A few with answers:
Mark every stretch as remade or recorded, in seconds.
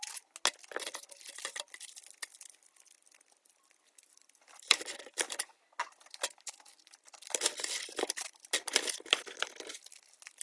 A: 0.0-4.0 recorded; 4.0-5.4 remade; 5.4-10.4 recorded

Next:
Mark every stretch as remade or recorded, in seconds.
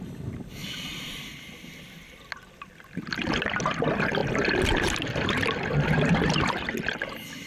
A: 0.0-7.5 recorded